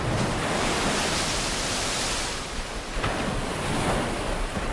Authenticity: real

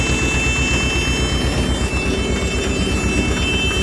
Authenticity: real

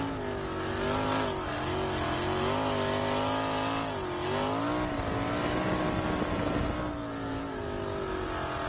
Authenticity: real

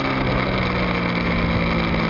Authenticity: real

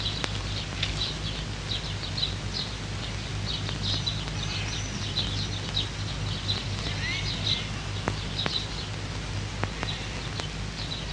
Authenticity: real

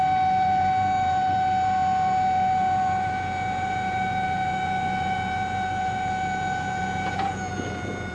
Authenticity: fake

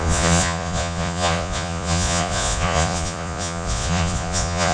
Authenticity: fake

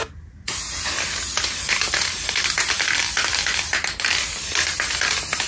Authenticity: real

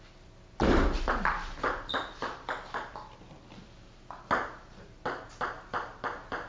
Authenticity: real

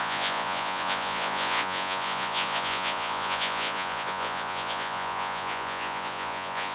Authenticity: fake